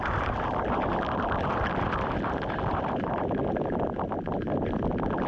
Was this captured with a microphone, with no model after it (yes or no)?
yes